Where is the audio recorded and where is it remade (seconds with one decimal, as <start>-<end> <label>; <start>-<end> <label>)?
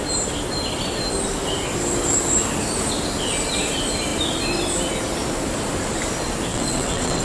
0.0-6.5 recorded; 6.5-7.2 remade